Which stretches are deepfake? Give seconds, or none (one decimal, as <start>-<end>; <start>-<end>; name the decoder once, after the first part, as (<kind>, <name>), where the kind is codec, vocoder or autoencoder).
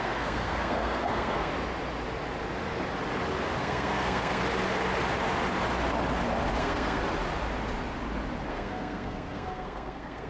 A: 0.0-1.5 (codec, SNAC); 3.6-4.4; 6.6-7.0; 8.5-10.3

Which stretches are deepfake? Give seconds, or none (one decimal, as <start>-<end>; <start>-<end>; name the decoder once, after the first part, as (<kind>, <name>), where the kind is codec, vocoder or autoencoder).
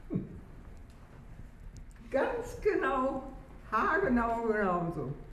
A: none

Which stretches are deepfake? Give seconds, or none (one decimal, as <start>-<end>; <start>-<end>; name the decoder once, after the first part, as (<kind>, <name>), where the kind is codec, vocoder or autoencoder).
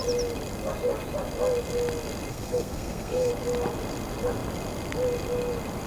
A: 2.3-3.3 (codec, SNAC)